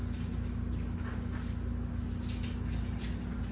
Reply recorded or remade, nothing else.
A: recorded